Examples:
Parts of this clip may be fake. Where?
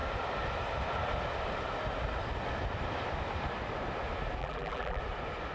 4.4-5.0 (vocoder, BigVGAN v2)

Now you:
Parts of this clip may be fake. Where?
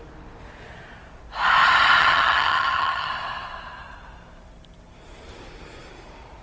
2.0-3.1 (vocoder, HiFi-GAN)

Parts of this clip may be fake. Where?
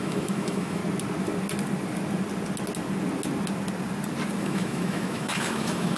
0.0-0.8 (autoencoder, DAC-VAE); 4.4-6.0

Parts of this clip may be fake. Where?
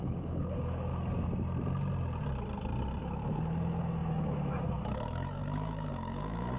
0.0-0.9 (autoencoder, DAC-VAE); 3.0-6.6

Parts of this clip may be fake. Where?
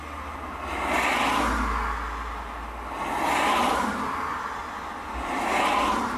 none